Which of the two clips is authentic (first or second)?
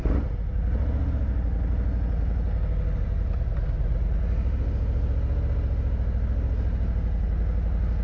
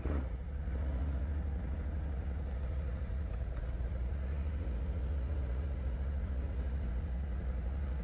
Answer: first